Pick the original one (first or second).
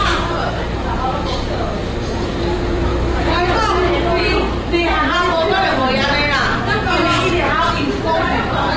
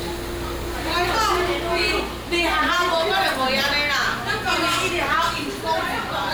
second